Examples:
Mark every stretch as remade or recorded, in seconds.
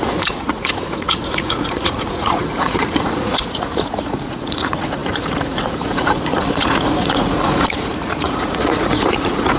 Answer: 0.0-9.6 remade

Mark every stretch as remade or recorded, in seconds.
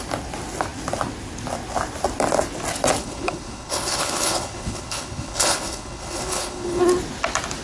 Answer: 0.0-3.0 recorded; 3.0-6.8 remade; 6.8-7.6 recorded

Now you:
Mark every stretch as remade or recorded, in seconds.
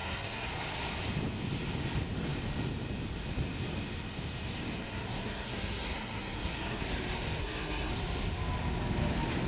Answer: 0.0-0.5 remade; 0.5-4.8 recorded; 4.8-6.8 remade; 6.8-7.4 recorded; 7.4-7.9 remade; 7.9-9.5 recorded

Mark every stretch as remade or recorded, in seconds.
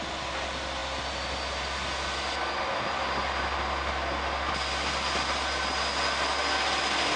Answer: 0.0-7.2 recorded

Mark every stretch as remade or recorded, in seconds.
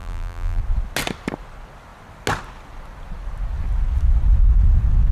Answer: 0.0-0.6 remade; 0.6-5.1 recorded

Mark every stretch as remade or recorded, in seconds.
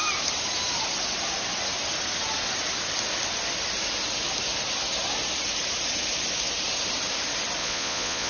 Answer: 0.0-7.6 recorded; 7.6-8.3 remade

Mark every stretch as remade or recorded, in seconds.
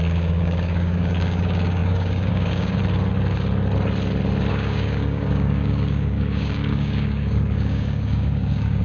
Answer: 0.0-2.8 remade; 2.8-4.5 recorded; 4.5-8.8 remade